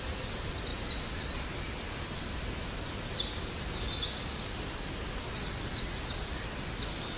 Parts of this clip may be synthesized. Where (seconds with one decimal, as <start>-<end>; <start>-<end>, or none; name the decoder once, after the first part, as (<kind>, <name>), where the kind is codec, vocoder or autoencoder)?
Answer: none